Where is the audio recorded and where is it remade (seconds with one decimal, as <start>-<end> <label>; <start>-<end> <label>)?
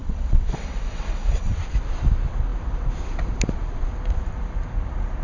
0.0-1.6 remade; 1.6-5.2 recorded